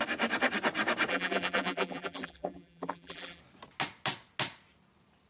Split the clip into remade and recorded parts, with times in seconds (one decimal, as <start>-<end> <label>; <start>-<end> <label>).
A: 0.0-1.1 recorded; 1.1-3.4 remade; 3.4-5.3 recorded